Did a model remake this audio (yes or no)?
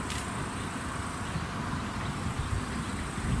no